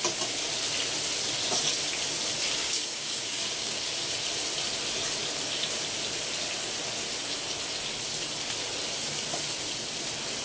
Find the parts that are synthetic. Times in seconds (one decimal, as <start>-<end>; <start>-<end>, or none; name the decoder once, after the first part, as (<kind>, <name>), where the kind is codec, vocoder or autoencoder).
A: 2.6-3.8 (codec, DAC)